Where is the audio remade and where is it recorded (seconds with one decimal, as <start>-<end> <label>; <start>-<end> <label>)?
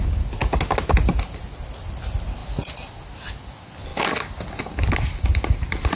0.0-6.0 recorded